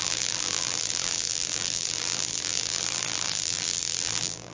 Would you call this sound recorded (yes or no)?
no